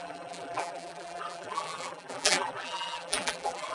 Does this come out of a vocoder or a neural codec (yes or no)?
yes